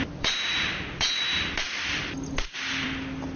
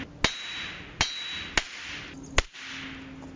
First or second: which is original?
second